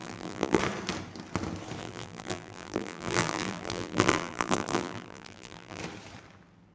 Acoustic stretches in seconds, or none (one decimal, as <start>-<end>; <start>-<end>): 0.6-1.8; 5.8-6.7